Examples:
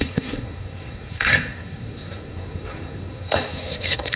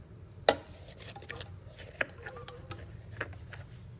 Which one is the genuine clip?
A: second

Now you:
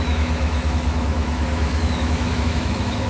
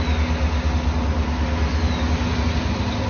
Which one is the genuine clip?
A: second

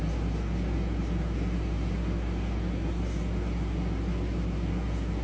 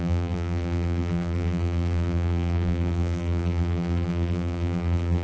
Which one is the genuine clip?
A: first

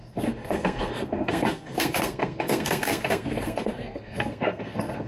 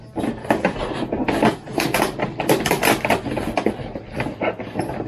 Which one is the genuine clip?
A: second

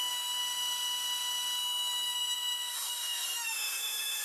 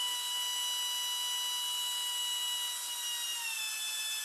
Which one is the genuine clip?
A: second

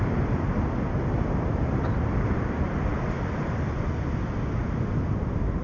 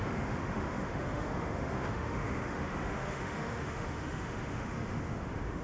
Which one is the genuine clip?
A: first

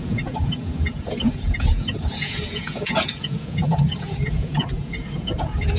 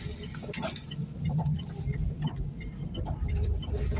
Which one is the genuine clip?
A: second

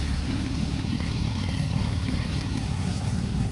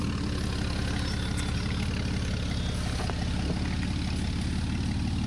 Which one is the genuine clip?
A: second